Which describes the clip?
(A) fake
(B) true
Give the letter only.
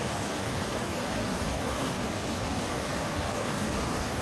A